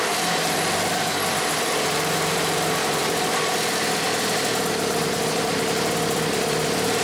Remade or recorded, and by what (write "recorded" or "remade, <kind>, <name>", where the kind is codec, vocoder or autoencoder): remade, vocoder, BigVGAN v2